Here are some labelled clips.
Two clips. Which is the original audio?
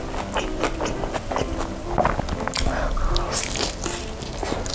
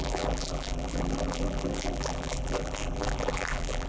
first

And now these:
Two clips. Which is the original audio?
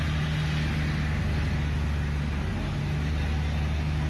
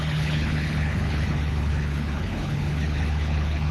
first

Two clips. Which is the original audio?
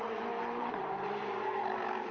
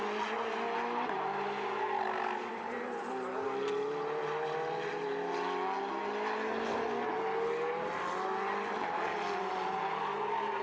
second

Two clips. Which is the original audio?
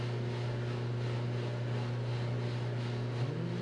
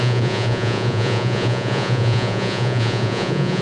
first